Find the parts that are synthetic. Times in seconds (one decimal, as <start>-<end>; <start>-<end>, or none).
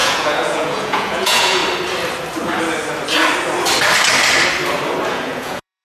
0.0-1.6; 5.1-5.8